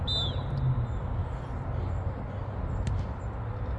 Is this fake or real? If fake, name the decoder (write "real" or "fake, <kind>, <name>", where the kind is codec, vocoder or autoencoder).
real